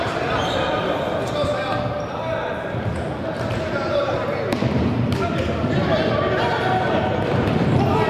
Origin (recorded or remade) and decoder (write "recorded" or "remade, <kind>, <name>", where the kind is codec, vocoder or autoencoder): recorded